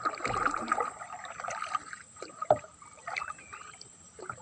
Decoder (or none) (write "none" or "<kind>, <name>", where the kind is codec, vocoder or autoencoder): none